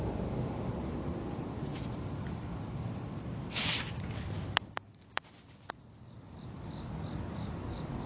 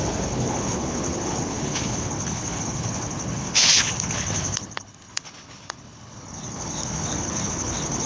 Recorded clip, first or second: first